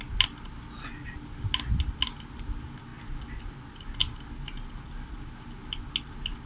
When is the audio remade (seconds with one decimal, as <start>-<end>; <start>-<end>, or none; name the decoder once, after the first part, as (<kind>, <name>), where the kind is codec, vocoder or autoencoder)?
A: none